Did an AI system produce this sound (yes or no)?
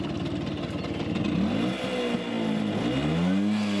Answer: no